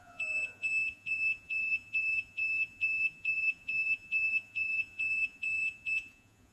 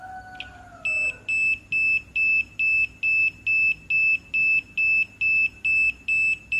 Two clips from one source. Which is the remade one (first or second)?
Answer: first